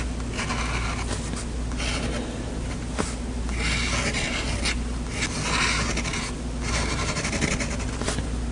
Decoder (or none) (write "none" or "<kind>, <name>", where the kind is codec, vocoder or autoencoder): none